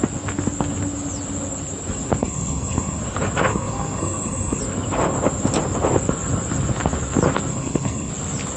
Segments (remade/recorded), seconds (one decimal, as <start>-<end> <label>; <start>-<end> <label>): 0.0-2.2 recorded; 2.2-3.0 remade; 3.0-3.5 recorded; 3.5-4.6 remade; 4.6-7.5 recorded; 7.5-8.1 remade; 8.1-8.6 recorded